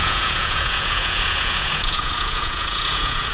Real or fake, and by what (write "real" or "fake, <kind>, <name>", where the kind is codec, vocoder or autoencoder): fake, vocoder, Vocos